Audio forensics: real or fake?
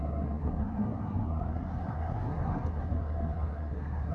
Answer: fake